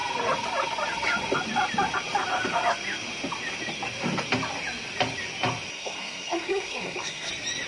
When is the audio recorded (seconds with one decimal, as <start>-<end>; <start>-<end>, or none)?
0.0-5.7; 7.3-7.7